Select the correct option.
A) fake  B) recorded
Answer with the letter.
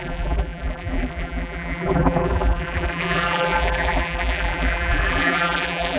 A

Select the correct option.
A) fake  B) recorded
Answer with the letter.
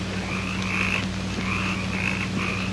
B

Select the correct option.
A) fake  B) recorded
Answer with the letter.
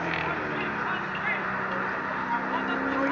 B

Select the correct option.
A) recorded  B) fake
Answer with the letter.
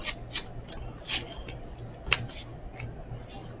A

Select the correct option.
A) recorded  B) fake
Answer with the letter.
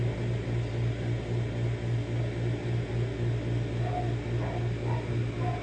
A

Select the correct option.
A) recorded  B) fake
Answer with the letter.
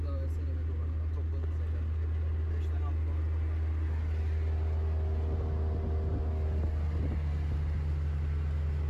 A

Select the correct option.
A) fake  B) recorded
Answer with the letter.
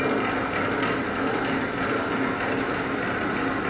B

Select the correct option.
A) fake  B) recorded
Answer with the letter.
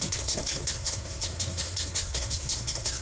A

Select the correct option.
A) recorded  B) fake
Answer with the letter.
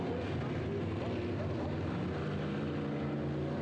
A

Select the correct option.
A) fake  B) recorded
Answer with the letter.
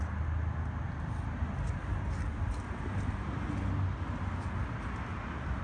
B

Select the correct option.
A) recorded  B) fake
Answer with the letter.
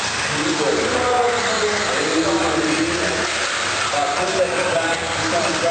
A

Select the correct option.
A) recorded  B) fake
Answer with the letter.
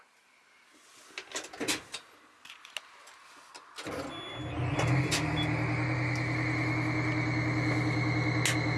A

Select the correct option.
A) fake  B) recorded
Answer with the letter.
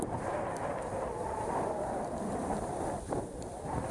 B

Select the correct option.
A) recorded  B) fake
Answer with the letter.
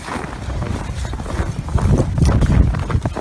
A